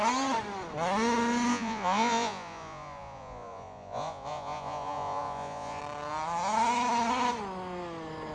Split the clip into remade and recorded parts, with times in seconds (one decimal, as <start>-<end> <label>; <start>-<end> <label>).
0.0-1.5 recorded; 1.5-5.8 remade; 5.8-8.3 recorded